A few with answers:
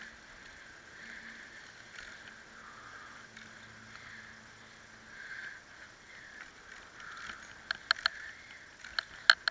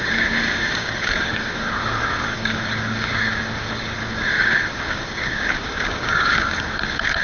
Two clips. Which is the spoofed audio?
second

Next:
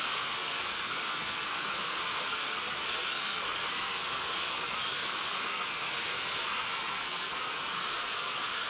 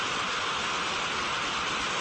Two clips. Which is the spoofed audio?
first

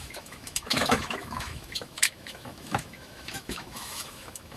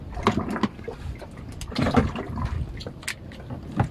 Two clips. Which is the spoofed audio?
first